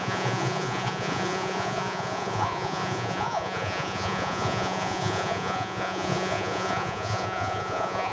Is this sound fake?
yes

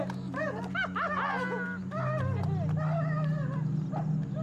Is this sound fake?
no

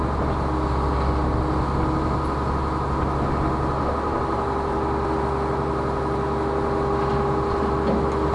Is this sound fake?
no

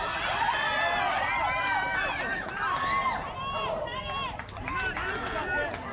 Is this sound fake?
no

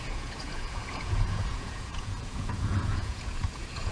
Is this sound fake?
yes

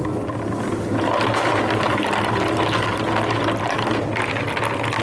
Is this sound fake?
no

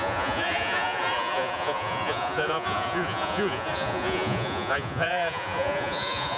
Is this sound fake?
yes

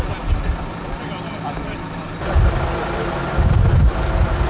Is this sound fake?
no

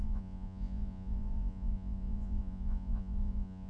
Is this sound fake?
yes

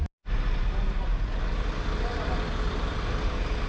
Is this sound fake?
no